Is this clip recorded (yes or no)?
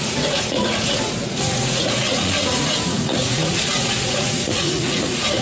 no